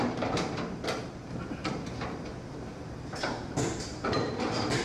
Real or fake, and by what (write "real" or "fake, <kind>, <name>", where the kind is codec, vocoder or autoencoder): fake, vocoder, BigVGAN v2